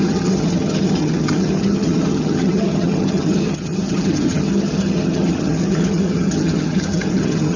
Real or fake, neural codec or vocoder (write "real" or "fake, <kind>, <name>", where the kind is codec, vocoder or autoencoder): fake, vocoder, HiFi-GAN